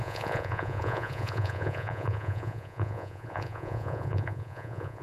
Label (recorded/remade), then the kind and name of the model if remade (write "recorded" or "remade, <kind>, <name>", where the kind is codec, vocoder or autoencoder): remade, vocoder, Vocos